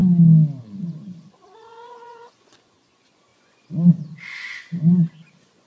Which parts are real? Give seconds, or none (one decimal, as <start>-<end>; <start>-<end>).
0.0-0.6